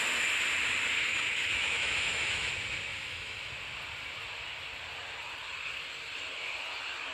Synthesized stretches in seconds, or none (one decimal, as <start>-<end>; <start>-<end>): 1.1-2.5; 2.9-3.5